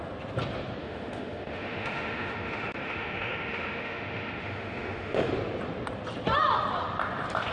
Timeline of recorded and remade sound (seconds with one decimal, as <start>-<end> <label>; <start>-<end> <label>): 0.0-0.8 recorded; 0.8-5.3 remade; 5.3-7.5 recorded